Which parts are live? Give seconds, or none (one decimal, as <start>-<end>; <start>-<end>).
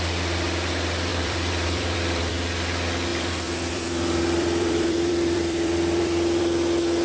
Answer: 0.0-1.1; 2.3-3.1; 6.4-7.0